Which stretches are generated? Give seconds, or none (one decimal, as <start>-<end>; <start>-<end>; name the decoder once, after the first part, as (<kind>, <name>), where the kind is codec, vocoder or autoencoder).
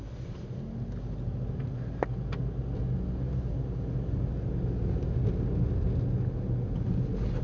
none